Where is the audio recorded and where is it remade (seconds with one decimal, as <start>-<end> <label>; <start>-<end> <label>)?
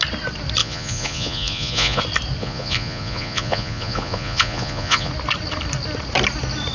0.0-0.6 recorded; 0.6-2.0 remade; 2.0-2.4 recorded; 2.4-5.1 remade; 5.1-6.7 recorded